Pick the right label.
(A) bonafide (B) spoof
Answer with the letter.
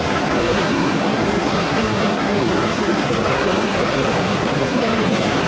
B